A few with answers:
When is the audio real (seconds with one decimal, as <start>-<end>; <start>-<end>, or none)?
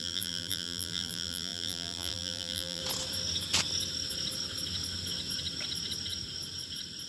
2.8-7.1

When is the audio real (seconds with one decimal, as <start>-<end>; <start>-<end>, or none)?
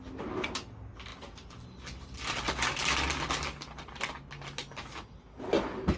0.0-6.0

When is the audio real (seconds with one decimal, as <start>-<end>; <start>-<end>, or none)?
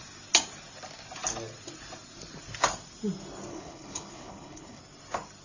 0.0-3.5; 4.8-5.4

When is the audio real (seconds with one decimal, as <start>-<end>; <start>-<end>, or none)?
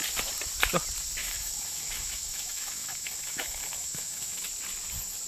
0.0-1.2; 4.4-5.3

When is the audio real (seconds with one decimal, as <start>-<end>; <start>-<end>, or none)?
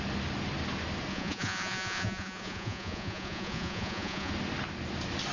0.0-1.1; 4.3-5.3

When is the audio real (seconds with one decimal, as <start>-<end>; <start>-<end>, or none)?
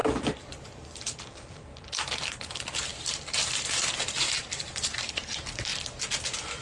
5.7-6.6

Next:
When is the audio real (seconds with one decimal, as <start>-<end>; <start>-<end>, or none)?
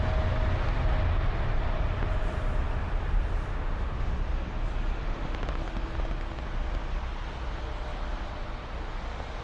0.0-3.5; 4.1-5.0; 5.6-9.4